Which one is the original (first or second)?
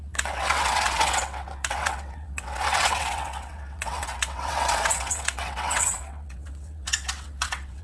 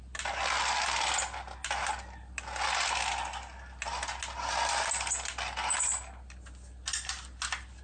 second